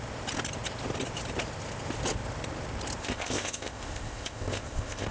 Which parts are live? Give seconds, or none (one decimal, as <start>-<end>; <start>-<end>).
0.0-3.0